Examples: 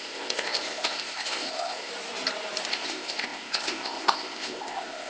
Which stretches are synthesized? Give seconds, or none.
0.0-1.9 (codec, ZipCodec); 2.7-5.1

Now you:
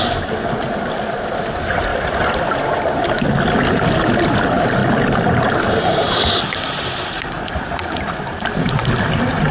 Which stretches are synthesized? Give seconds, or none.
none

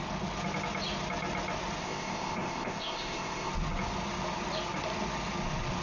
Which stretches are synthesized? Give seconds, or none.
1.8-3.5 (codec, ZipCodec)